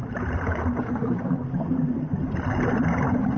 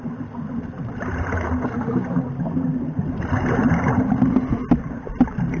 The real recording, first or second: second